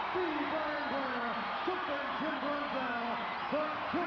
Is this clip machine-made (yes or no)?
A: no